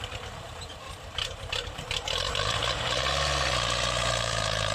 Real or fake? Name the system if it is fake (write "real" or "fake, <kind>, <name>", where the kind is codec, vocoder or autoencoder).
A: fake, vocoder, BigVGAN v2